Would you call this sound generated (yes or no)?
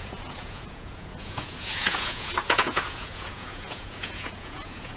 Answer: yes